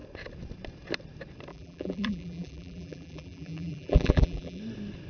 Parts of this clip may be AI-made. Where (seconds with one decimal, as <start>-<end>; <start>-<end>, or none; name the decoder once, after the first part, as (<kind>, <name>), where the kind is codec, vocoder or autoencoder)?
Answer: 1.5-4.6 (vocoder, BigVGAN v2)